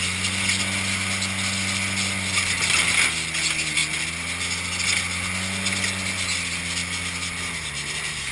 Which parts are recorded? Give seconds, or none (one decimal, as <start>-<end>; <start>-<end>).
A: 0.0-8.3